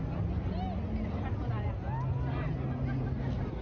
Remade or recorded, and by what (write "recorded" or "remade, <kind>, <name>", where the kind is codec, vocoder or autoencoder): recorded